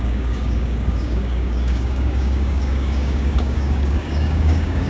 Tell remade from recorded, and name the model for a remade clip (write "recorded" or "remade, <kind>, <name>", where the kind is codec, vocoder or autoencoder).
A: remade, codec, DAC